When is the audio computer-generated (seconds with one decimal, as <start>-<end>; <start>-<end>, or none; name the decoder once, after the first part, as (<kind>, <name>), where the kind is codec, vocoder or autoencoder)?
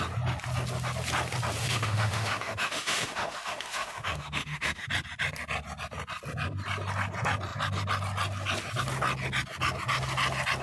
1.6-4.9 (autoencoder, DAC-VAE)